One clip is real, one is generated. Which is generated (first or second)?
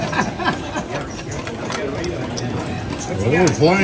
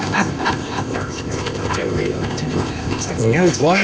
second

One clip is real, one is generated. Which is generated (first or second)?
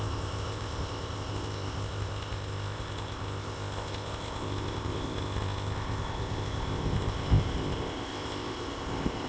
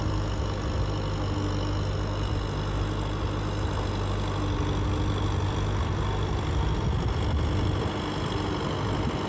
first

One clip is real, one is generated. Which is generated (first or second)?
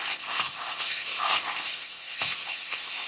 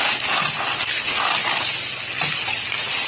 first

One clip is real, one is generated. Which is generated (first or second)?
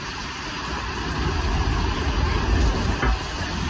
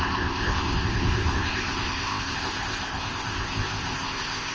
second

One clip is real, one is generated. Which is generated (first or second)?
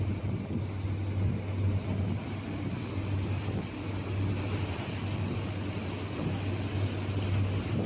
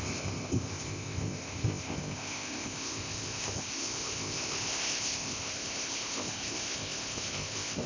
second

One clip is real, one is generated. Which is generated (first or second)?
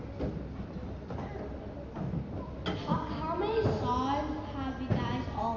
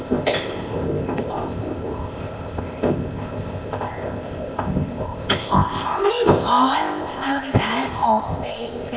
second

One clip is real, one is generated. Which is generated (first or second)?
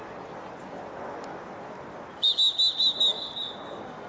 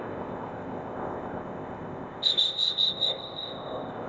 second